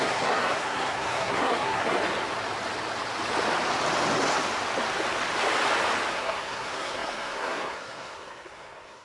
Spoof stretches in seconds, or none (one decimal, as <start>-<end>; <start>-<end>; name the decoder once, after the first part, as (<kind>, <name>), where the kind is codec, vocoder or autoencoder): 0.0-2.0 (codec, SNAC); 6.1-9.0